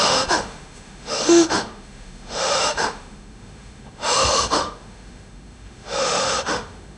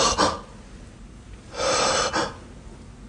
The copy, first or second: first